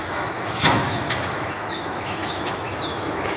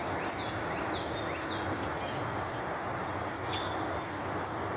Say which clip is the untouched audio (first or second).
second